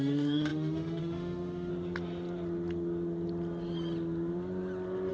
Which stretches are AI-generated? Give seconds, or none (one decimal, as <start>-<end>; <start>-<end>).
0.0-1.7